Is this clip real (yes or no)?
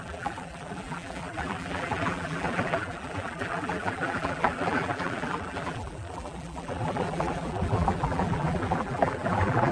no